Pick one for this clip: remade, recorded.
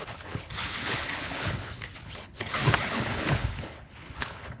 remade